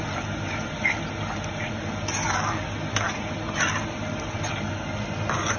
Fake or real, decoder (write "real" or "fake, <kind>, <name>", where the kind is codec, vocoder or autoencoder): real